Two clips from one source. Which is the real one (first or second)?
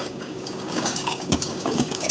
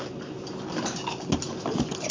second